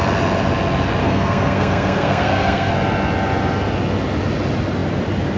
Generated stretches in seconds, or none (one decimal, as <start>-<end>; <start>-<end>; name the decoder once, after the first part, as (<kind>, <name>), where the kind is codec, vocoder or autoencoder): 1.0-2.7 (codec, SNAC)